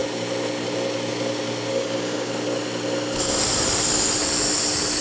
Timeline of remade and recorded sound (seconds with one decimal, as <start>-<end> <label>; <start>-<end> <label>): 0.0-1.7 recorded; 1.7-2.3 remade; 2.3-5.0 recorded